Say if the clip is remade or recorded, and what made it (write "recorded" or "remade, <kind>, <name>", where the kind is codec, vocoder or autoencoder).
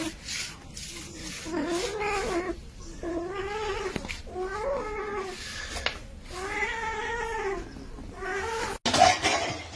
recorded